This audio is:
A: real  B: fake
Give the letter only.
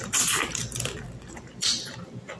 B